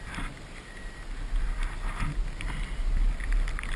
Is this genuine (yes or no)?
yes